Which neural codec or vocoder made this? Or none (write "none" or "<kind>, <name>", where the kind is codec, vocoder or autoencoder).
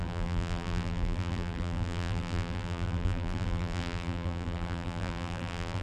vocoder, BigVGAN v2